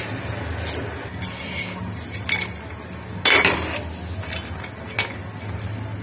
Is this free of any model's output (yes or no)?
yes